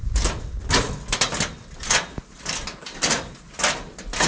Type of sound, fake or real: real